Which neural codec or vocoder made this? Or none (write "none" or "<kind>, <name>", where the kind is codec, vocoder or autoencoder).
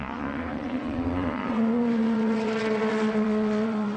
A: vocoder, Vocos